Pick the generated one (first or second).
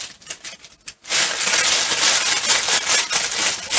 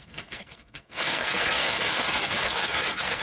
second